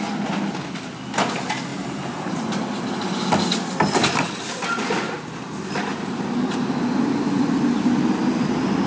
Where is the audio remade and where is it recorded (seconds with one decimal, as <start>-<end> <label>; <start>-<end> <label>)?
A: 0.0-1.7 recorded; 1.7-2.6 remade; 2.6-8.9 recorded